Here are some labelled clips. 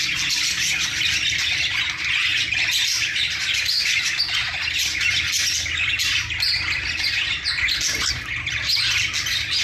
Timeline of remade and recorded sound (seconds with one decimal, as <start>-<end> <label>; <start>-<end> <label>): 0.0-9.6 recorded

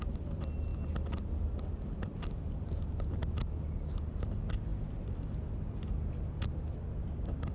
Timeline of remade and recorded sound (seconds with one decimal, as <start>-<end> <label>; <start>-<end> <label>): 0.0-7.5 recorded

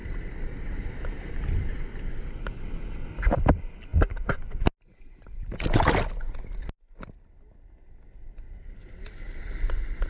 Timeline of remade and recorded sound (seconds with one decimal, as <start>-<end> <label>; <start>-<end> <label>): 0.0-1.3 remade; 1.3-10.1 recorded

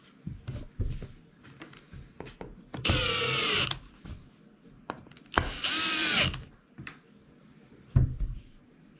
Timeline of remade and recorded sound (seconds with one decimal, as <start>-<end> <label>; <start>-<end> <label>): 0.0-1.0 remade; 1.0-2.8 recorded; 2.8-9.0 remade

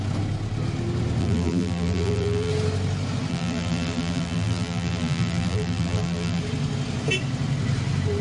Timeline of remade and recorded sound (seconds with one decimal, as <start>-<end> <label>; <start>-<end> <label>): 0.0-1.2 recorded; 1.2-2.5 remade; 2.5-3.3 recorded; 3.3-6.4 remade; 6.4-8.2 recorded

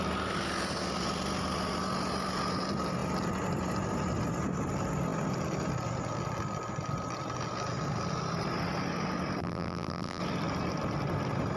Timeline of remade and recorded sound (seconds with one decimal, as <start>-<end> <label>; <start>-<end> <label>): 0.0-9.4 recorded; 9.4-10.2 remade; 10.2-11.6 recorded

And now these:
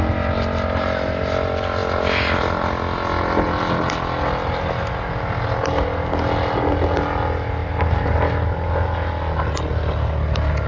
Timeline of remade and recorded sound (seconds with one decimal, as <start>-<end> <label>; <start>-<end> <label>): 0.0-1.8 recorded; 1.8-2.4 remade; 2.4-7.6 recorded; 7.6-8.2 remade; 8.2-10.7 recorded